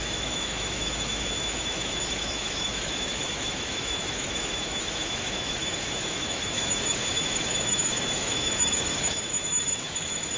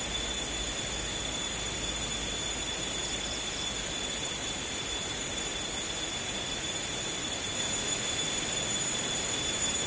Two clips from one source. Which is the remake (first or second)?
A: first